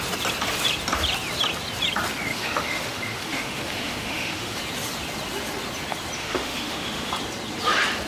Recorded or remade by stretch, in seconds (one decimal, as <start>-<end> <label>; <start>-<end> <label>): 0.0-2.3 recorded; 2.3-4.6 remade; 4.6-6.2 recorded; 6.2-7.1 remade; 7.1-8.1 recorded

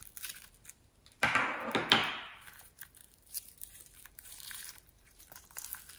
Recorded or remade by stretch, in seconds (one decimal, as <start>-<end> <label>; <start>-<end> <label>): 0.0-2.0 recorded; 2.0-5.6 remade; 5.6-6.0 recorded

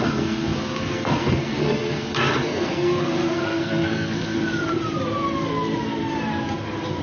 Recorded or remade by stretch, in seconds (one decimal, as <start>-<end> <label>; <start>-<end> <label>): 0.0-4.4 remade; 4.4-7.0 recorded